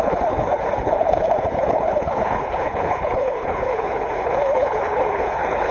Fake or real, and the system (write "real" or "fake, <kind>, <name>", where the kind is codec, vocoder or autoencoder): fake, codec, HILCodec